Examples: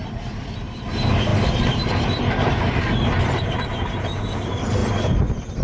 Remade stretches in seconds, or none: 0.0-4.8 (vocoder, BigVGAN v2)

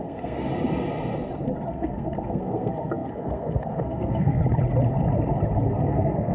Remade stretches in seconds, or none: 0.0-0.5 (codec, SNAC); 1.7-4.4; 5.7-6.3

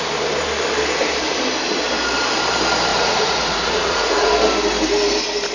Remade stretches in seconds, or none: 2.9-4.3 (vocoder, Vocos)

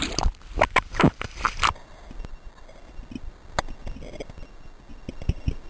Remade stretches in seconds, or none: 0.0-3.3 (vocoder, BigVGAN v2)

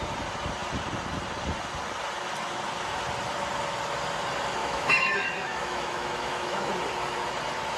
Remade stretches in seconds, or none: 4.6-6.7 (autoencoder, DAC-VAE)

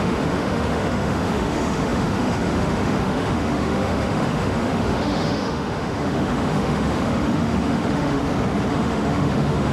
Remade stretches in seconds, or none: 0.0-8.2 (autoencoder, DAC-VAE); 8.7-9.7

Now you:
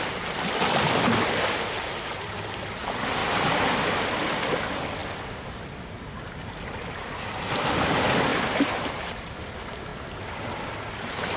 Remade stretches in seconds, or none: 3.2-3.7 (vocoder, BigVGAN v2); 8.3-9.5